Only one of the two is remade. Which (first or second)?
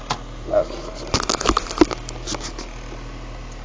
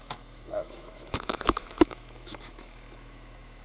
second